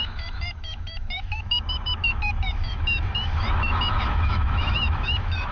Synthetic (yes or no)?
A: yes